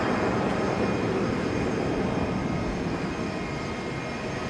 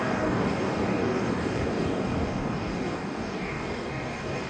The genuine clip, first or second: first